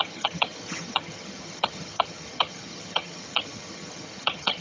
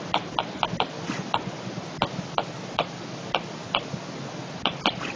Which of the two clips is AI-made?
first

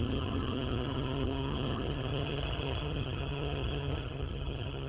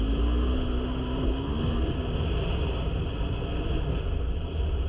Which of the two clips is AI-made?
first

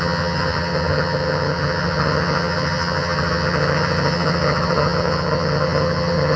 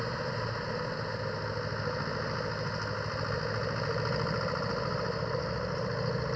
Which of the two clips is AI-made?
first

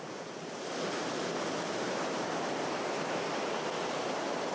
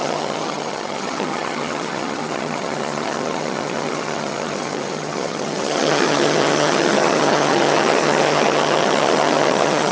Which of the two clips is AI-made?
second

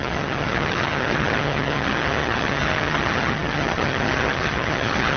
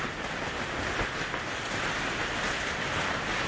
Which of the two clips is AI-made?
first